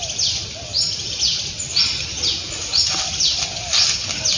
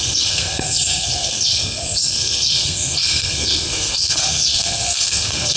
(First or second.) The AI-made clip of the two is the second